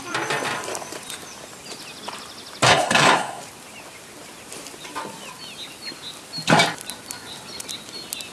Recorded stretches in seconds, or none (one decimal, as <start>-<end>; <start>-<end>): 0.0-2.7; 3.4-8.3